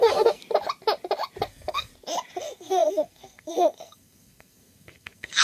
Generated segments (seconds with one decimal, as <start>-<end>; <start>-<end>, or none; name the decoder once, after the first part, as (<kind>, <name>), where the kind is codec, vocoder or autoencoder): 0.0-0.4 (codec, SNAC); 1.4-1.9; 2.4-5.4

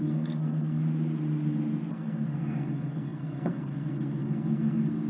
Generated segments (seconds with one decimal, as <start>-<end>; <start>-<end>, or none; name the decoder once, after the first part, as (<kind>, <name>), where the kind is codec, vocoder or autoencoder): 0.0-0.8 (codec, SNAC); 1.9-5.1

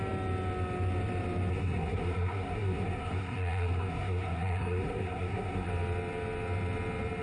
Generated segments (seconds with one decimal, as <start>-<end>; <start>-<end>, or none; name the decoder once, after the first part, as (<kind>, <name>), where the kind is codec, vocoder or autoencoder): 1.5-5.7 (codec, SNAC)

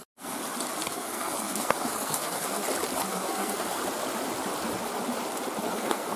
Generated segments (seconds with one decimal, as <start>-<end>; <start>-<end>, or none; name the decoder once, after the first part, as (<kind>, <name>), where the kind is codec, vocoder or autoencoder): 0.0-0.4 (codec, SNAC); 0.9-2.6; 3.1-3.8; 5.6-6.2